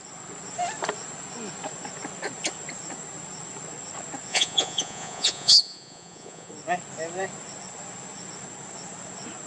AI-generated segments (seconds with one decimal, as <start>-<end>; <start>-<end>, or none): 4.3-6.5